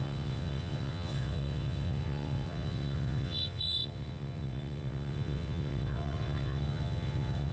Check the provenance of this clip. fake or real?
fake